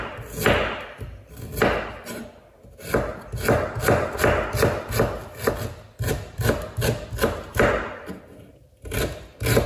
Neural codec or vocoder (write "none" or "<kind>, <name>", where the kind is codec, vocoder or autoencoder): none